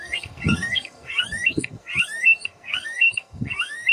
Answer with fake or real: fake